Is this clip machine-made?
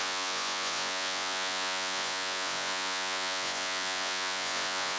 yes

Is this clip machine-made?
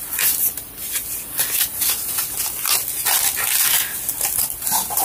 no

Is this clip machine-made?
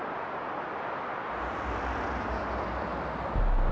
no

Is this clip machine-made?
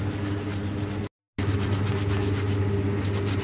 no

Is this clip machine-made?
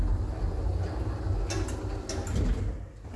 no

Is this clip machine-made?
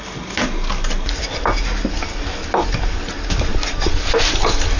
no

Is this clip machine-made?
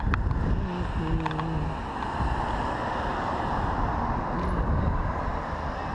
no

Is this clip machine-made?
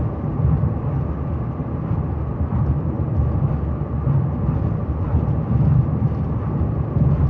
no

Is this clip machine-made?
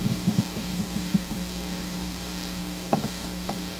yes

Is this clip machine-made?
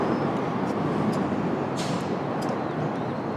no